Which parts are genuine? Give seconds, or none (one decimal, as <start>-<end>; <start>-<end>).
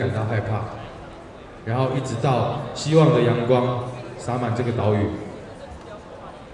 0.0-6.5